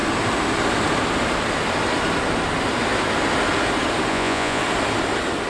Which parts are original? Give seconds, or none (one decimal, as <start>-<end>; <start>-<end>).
0.0-4.1; 4.6-5.5